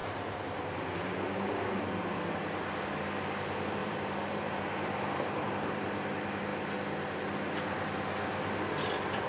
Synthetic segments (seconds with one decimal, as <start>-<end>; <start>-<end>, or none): 0.0-0.6; 3.8-5.5